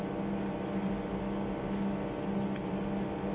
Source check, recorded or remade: recorded